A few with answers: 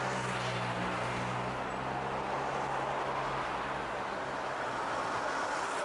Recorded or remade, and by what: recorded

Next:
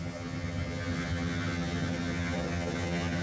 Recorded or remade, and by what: remade, vocoder, HiFi-GAN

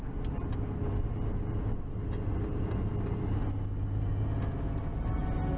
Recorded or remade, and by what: recorded